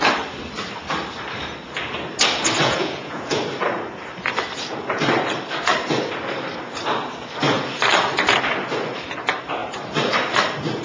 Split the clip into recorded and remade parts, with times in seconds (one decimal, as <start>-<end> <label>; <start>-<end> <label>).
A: 0.0-2.6 recorded; 2.6-3.4 remade; 3.4-10.8 recorded